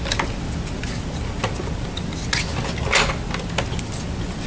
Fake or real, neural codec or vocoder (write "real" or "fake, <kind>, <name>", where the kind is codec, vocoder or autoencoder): real